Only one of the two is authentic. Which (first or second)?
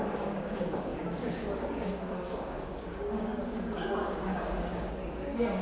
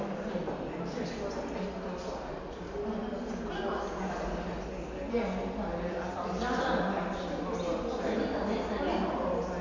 second